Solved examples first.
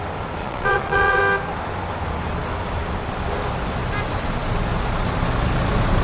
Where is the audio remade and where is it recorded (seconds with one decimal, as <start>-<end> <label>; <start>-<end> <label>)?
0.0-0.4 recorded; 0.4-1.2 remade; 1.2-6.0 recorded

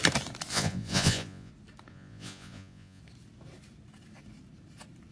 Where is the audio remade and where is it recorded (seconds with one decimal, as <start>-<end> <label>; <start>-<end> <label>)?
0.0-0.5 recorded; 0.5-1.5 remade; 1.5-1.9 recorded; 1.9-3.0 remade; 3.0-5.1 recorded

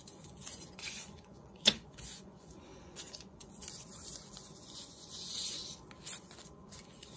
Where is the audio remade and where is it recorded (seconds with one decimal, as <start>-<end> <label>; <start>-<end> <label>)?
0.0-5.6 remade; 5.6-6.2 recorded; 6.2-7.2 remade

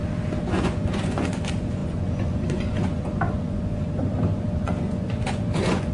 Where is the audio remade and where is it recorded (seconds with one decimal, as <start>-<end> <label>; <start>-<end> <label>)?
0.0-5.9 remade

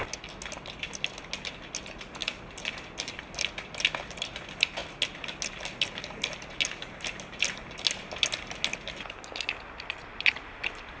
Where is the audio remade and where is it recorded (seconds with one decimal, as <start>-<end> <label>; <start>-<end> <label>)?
0.0-11.0 recorded

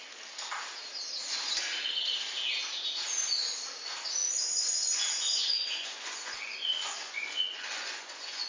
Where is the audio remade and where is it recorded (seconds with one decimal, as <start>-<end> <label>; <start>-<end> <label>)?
0.0-4.2 recorded; 4.2-8.5 remade